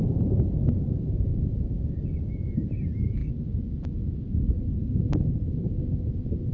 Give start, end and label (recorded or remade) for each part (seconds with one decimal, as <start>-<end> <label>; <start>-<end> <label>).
0.0-3.2 remade; 3.2-4.3 recorded; 4.3-5.8 remade; 5.8-6.5 recorded